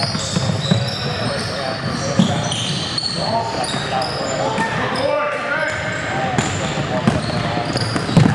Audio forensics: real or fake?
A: real